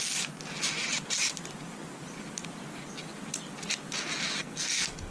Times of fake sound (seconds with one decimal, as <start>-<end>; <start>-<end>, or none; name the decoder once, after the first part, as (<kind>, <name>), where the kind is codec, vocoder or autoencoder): 4.4-5.1 (codec, SNAC)